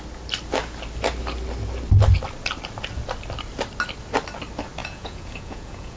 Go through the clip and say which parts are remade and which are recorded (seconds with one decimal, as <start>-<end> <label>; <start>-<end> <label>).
0.0-4.8 recorded; 4.8-6.0 remade